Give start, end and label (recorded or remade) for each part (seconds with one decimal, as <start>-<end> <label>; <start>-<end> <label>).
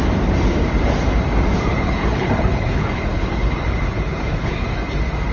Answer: 0.0-1.7 recorded; 1.7-4.5 remade; 4.5-5.3 recorded